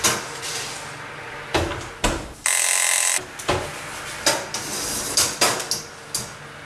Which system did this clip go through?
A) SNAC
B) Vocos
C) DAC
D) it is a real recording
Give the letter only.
D